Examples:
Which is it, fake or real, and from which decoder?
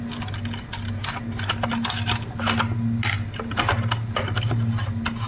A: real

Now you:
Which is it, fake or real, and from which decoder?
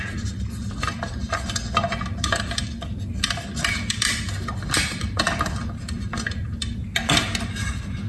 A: real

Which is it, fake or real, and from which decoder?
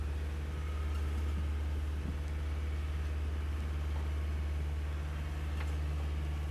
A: real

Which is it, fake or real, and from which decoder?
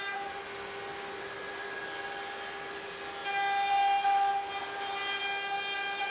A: real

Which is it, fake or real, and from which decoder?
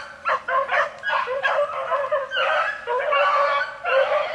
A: real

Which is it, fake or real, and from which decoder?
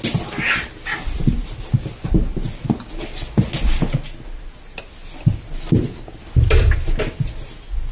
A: real